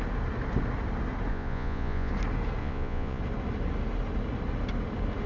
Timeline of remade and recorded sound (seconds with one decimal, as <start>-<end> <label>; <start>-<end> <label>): 0.0-1.3 recorded; 1.3-2.1 remade; 2.1-2.6 recorded; 2.6-3.2 remade; 3.2-5.3 recorded

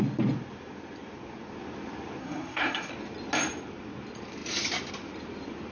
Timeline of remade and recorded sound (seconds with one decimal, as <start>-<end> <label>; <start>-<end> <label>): 0.0-2.2 recorded; 2.2-2.9 remade; 2.9-5.7 recorded

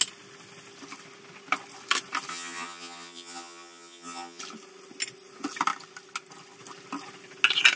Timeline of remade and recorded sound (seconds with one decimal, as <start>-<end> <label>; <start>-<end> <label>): 0.0-2.3 recorded; 2.3-4.4 remade; 4.4-7.8 recorded